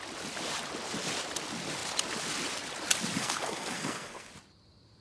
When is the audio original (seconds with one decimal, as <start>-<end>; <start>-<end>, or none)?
0.0-3.2; 4.3-5.0